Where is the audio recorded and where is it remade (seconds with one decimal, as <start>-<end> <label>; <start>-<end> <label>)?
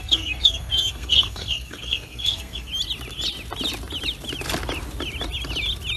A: 0.0-2.7 remade; 2.7-6.0 recorded